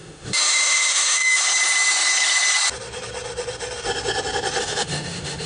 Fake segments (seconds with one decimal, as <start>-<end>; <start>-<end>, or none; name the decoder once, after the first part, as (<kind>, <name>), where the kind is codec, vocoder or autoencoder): 0.0-1.4 (autoencoder, DAC-VAE); 4.6-5.5